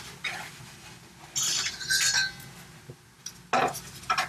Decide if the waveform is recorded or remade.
recorded